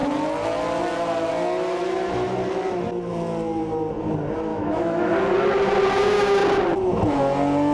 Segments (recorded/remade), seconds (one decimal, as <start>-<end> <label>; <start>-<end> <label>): 0.0-4.5 recorded; 4.5-5.1 remade; 5.1-7.7 recorded